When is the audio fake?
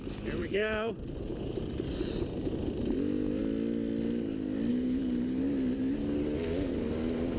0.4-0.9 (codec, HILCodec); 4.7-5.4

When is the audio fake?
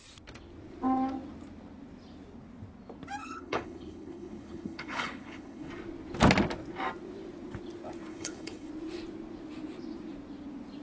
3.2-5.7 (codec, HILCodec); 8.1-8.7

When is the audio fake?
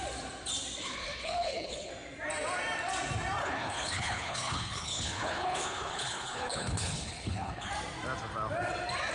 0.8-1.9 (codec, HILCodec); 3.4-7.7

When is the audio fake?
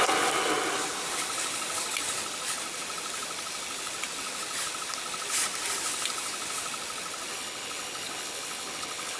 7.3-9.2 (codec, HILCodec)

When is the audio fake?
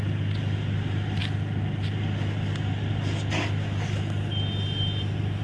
none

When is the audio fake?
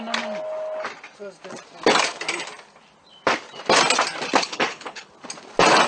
4.4-5.1 (codec, HILCodec)